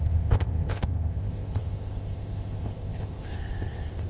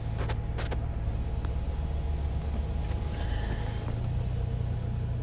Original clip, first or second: second